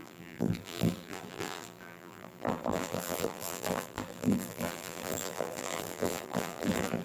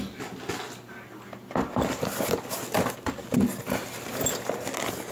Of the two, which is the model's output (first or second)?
first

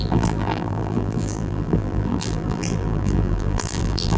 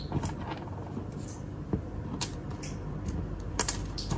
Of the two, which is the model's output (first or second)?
first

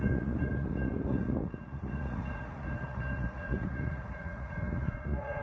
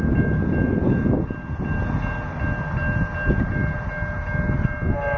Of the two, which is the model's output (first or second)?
first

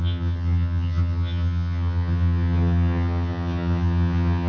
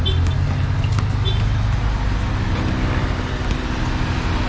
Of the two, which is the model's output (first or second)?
first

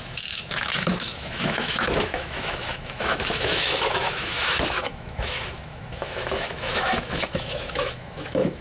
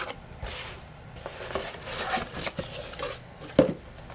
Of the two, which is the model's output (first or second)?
first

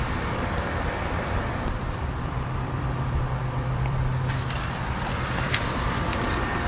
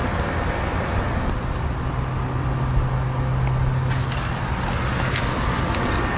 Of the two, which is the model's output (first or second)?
first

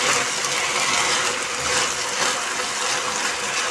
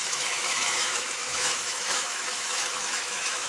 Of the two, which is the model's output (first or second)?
second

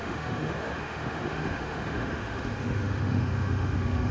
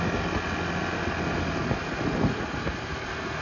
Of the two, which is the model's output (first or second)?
first